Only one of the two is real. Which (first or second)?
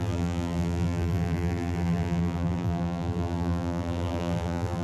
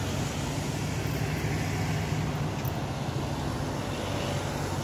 second